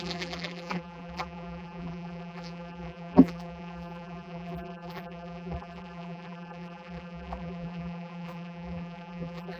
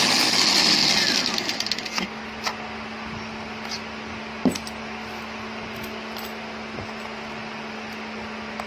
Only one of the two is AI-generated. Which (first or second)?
first